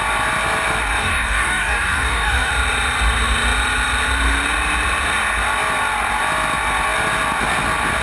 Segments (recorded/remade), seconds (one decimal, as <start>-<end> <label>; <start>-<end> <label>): 0.0-1.0 recorded; 1.0-2.5 remade; 2.5-8.0 recorded